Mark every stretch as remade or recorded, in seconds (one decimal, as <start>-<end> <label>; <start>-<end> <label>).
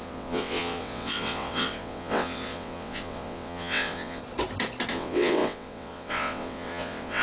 0.0-4.2 remade; 4.2-4.9 recorded; 4.9-7.2 remade